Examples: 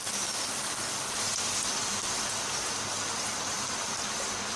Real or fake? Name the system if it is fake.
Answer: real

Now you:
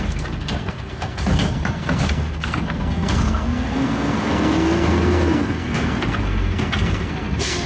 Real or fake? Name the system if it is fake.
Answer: fake, codec, SNAC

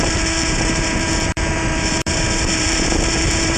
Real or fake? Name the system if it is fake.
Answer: fake, vocoder, BigVGAN v2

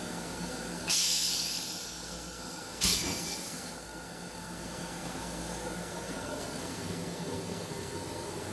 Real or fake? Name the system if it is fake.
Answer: fake, codec, SNAC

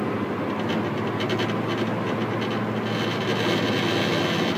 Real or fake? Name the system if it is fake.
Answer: real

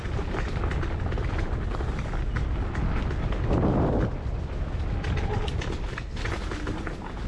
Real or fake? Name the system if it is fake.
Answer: real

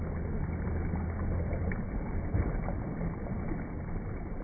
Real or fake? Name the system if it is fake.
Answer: real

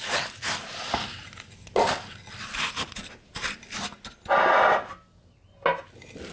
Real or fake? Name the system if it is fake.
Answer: real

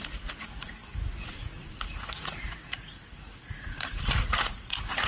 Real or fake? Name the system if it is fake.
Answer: fake, vocoder, Vocos